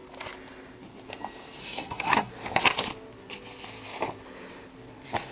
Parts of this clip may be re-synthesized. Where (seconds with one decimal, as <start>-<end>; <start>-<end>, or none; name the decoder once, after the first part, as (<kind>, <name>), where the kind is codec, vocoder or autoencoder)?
1.6-2.3 (codec, SNAC)